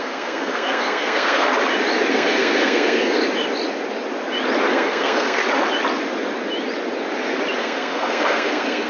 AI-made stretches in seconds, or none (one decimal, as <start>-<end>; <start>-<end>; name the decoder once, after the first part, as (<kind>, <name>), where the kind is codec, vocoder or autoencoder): 0.0-1.5 (codec, SNAC); 2.1-3.2; 4.7-5.4; 7.6-8.9